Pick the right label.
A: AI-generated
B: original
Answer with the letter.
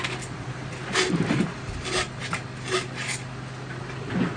B